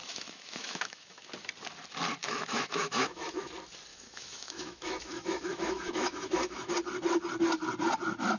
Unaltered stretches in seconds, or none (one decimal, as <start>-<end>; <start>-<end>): 1.3-2.2; 3.5-3.9; 6.7-8.4

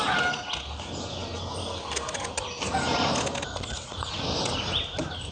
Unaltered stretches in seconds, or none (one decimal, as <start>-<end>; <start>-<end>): 0.0-5.3

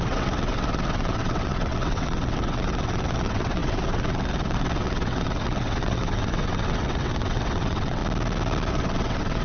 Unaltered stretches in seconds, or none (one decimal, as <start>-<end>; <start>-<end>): 8.0-8.7